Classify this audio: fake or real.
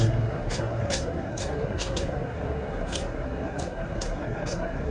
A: fake